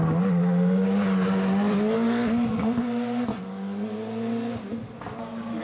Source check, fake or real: real